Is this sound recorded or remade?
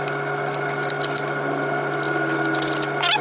recorded